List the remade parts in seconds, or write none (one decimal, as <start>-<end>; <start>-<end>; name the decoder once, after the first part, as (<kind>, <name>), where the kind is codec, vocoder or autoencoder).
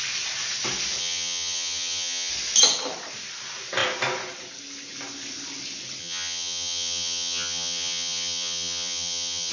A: 1.0-2.3 (vocoder, HiFi-GAN); 6.0-9.5